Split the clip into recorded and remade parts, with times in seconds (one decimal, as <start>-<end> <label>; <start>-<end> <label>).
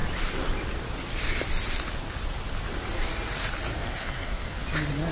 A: 0.0-3.7 recorded; 3.7-4.6 remade; 4.6-5.1 recorded